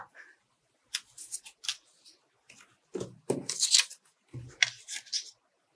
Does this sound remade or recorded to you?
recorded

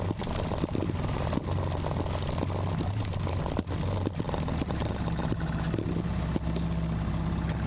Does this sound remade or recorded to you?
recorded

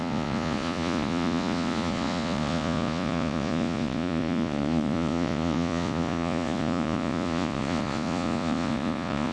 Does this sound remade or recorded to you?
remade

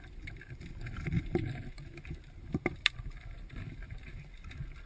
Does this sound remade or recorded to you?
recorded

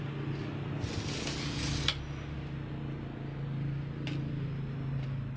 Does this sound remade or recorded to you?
recorded